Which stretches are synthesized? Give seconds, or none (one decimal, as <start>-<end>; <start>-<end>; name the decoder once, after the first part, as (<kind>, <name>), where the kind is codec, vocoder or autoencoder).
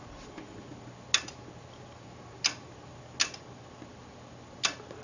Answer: none